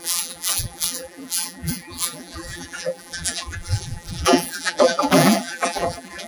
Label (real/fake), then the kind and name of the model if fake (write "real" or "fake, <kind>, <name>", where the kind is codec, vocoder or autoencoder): fake, vocoder, BigVGAN v2